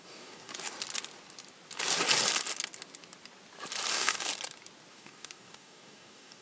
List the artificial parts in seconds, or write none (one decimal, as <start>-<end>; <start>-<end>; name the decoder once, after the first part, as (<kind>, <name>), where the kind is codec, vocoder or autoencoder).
0.0-0.5 (codec, DAC); 3.9-4.3; 4.9-6.4